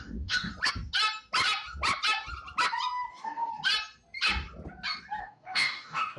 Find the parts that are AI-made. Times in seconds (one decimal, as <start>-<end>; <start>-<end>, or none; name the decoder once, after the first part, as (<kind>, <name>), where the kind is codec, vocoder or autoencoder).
0.0-0.5 (codec, DAC); 3.1-3.5; 5.2-6.2